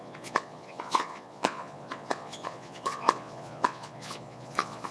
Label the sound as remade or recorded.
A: remade